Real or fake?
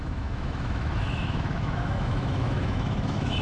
fake